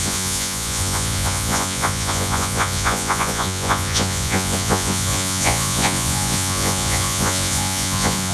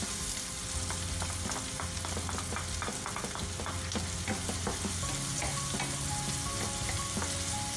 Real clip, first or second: second